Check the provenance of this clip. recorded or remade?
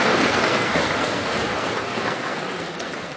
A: remade